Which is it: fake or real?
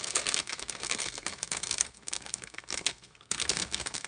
fake